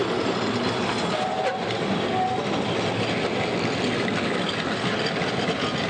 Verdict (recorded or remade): recorded